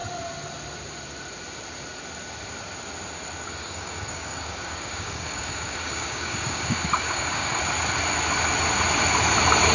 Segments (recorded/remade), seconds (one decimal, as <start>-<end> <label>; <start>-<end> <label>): 0.0-3.6 recorded; 3.6-7.6 remade; 7.6-9.7 recorded